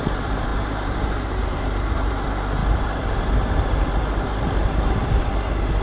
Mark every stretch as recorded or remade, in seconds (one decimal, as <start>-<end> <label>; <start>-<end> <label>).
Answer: 0.0-0.5 recorded; 0.5-2.1 remade; 2.1-2.6 recorded; 2.6-3.9 remade; 3.9-4.6 recorded; 4.6-5.3 remade; 5.3-5.8 recorded

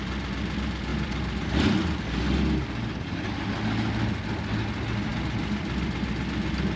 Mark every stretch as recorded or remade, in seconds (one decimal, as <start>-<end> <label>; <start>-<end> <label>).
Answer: 0.0-0.9 recorded; 0.9-2.0 remade; 2.0-5.1 recorded; 5.1-6.1 remade; 6.1-6.8 recorded

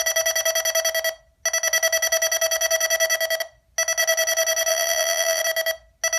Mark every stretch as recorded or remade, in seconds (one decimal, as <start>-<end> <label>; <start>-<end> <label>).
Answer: 0.0-4.7 recorded; 4.7-5.4 remade; 5.4-6.2 recorded

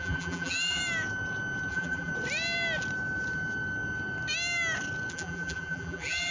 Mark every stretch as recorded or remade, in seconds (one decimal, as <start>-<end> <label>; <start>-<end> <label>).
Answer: 0.0-0.8 remade; 0.8-1.7 recorded; 1.7-2.1 remade; 2.1-5.1 recorded; 5.1-6.3 remade

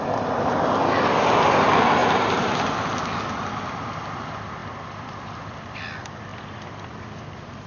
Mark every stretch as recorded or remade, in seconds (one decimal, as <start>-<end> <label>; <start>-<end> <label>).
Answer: 0.0-2.0 recorded; 2.0-2.6 remade; 2.6-7.7 recorded